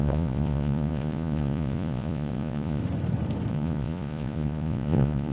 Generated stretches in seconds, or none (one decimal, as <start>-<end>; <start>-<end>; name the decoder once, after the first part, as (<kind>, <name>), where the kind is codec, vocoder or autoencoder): 0.0-2.8 (vocoder, Vocos); 3.5-5.3